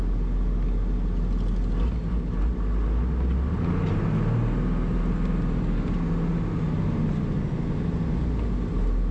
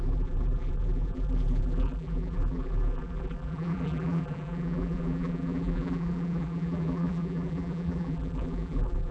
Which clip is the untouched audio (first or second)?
first